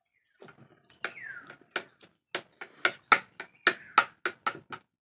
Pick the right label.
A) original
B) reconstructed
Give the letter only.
A